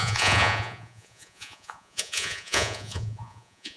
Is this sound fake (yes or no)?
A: yes